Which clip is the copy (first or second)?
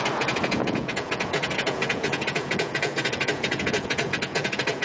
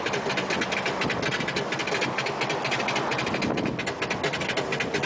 first